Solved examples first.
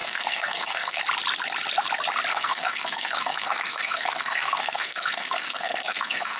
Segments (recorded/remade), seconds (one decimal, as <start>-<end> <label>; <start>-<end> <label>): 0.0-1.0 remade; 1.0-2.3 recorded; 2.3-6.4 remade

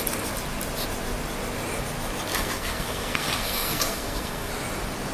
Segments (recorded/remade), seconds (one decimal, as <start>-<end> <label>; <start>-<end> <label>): 0.0-2.3 recorded; 2.3-4.5 remade; 4.5-5.1 recorded

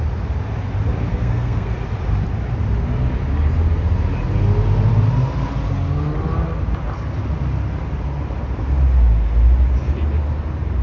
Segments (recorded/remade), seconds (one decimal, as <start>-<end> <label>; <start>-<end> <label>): 0.0-1.1 recorded; 1.1-1.7 remade; 1.7-10.8 recorded

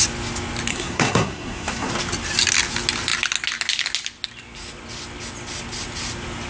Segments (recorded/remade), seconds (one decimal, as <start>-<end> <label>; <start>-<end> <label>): 0.0-0.7 recorded; 0.7-1.9 remade; 1.9-6.5 recorded

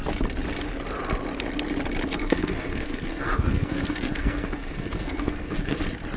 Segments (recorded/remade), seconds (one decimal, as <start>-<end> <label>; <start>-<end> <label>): 0.0-2.1 recorded; 2.1-5.8 remade; 5.8-6.2 recorded

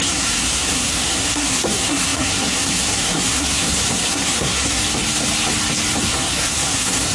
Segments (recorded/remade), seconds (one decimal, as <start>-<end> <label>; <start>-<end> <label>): 0.0-4.8 remade; 4.8-6.1 recorded; 6.1-7.1 remade

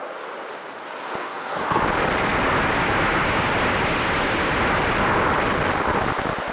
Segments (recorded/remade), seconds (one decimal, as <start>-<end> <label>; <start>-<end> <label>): 0.0-1.2 recorded; 1.2-1.8 remade; 1.8-6.5 recorded